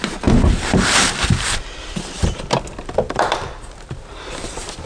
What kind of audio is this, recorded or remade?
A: remade